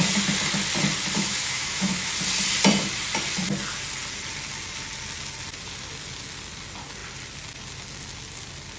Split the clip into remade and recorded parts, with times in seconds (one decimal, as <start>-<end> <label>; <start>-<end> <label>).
0.0-1.2 recorded; 1.2-2.1 remade; 2.1-8.8 recorded